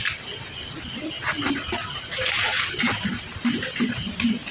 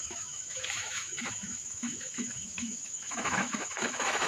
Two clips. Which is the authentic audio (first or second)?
first